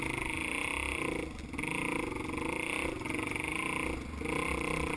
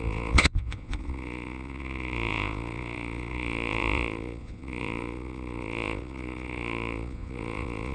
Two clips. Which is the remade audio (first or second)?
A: second